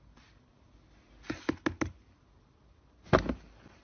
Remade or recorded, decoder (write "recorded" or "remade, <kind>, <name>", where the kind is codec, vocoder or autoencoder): recorded